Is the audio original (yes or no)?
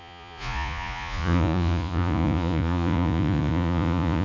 no